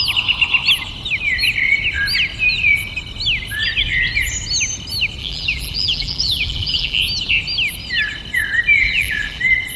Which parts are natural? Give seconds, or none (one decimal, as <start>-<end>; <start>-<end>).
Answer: 0.0-5.2; 7.0-8.8; 9.4-9.8